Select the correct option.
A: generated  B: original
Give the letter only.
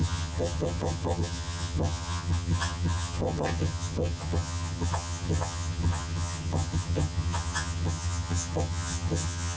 A